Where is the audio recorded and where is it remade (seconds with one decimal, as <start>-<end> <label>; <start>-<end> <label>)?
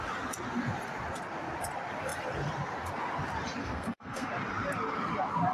0.0-3.6 recorded; 3.6-4.3 remade; 4.3-5.5 recorded